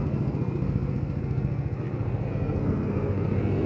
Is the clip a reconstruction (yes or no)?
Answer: yes